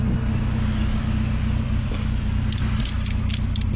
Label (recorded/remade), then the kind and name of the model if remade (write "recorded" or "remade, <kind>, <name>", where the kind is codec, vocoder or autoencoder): recorded